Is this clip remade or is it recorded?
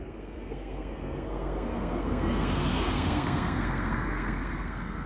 remade